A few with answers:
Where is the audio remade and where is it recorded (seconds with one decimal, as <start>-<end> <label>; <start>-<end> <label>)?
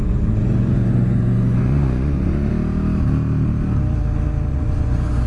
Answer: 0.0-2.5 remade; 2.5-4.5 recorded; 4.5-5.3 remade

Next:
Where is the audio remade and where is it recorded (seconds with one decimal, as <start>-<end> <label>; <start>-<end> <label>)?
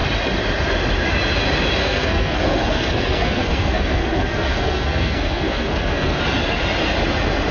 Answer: 0.0-1.8 recorded; 1.8-6.2 remade; 6.2-7.5 recorded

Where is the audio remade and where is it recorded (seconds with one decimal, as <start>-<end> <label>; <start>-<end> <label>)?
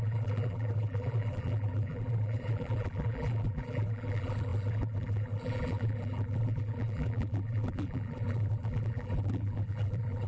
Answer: 0.0-10.3 remade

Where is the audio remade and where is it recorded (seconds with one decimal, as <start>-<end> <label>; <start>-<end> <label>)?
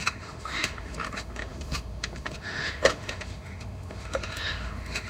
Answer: 0.0-5.1 remade